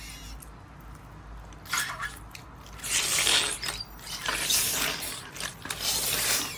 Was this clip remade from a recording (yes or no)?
no